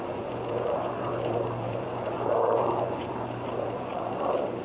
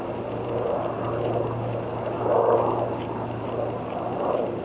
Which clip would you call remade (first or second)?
first